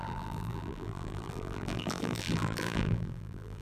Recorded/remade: remade